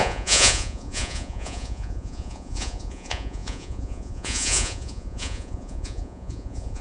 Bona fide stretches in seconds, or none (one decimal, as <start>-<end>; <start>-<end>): none